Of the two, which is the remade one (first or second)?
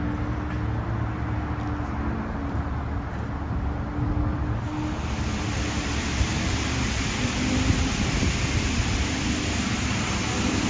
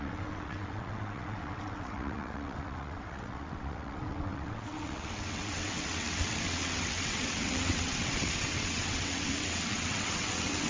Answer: second